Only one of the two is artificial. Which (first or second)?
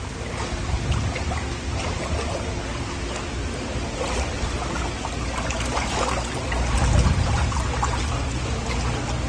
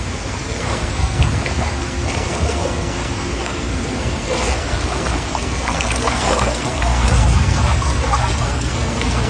second